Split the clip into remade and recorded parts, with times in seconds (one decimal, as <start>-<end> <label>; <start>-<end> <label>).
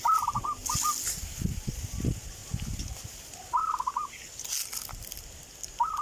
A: 0.0-2.4 recorded; 2.4-3.1 remade; 3.1-6.0 recorded